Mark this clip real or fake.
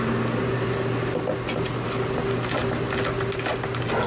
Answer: real